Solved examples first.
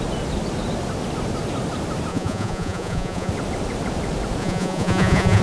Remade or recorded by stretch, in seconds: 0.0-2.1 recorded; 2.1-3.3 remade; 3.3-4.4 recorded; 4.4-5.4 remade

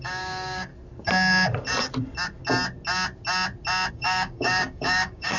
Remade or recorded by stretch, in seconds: 0.0-0.7 remade; 0.7-3.9 recorded; 3.9-5.4 remade

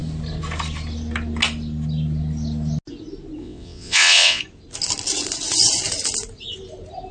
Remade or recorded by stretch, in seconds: 0.0-3.4 recorded; 3.4-4.4 remade; 4.4-7.1 recorded

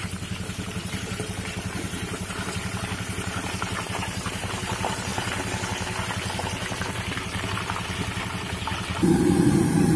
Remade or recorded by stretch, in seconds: 0.0-5.1 remade; 5.1-9.1 recorded; 9.1-10.0 remade

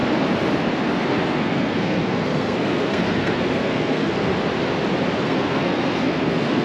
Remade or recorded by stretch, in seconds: 0.0-1.0 recorded; 1.0-4.3 remade; 4.3-5.2 recorded; 5.2-6.6 remade

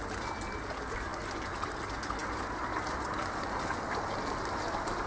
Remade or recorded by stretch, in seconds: 0.0-5.1 recorded

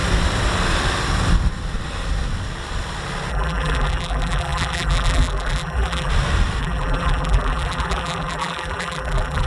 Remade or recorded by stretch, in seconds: 0.0-3.3 recorded; 3.3-6.1 remade; 6.1-6.6 recorded; 6.6-9.5 remade

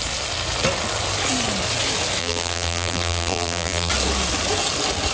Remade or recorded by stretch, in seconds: 0.0-2.2 recorded; 2.2-3.9 remade; 3.9-5.1 recorded